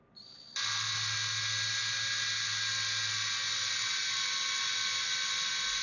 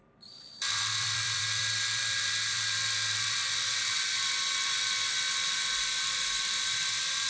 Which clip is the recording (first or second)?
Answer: first